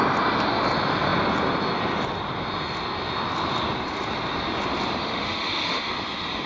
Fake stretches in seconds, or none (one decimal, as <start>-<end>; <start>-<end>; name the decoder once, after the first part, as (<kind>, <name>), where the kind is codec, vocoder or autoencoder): 5.0-5.9 (autoencoder, DAC-VAE)